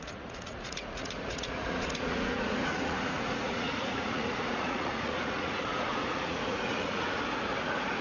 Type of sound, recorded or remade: remade